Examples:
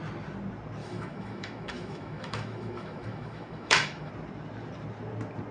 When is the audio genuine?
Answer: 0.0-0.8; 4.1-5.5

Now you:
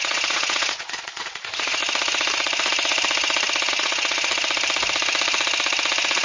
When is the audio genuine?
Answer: 1.8-3.7; 4.3-6.2

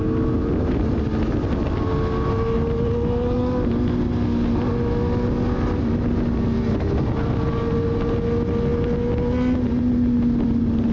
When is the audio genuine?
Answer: 0.0-10.9

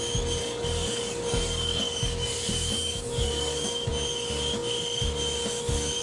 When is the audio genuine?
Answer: 0.0-0.4; 3.9-6.0

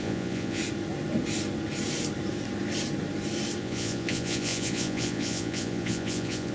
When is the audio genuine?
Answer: 0.6-3.6

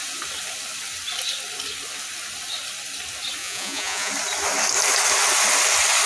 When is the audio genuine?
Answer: 0.0-3.4; 4.1-6.1

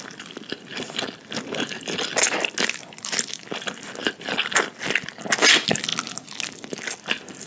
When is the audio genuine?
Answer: 0.0-7.5